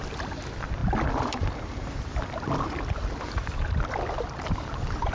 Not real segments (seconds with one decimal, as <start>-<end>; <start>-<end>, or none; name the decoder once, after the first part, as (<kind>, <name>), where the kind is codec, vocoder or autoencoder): none